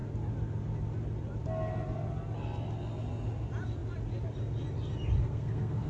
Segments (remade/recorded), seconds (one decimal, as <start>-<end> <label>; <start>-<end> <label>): 0.0-5.2 recorded; 5.2-5.9 remade